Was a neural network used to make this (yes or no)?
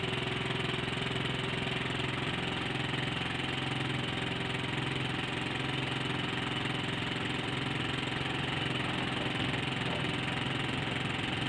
no